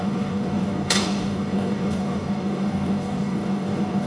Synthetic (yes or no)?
yes